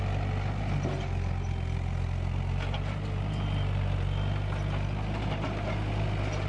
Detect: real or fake real